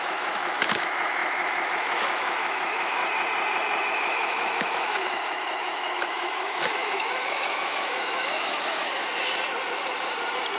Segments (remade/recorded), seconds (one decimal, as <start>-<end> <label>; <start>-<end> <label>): 0.0-3.0 remade; 3.0-3.9 recorded; 3.9-9.0 remade; 9.0-10.6 recorded